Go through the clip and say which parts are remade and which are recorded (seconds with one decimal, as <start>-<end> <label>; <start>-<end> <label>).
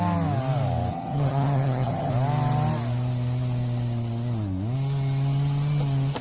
0.0-0.9 recorded; 0.9-2.1 remade; 2.1-6.2 recorded